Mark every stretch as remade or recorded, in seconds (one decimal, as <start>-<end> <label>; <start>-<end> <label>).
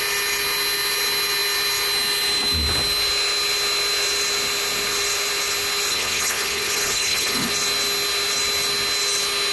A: 0.0-5.9 recorded; 5.9-7.5 remade; 7.5-9.5 recorded